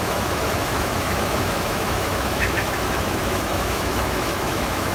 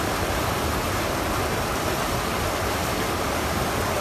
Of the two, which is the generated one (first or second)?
first